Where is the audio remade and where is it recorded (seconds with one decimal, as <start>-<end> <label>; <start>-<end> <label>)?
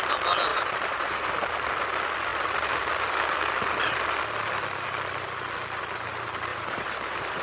0.0-0.5 recorded; 0.5-1.3 remade; 1.3-6.5 recorded; 6.5-7.4 remade